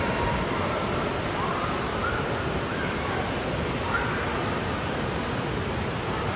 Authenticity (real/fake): real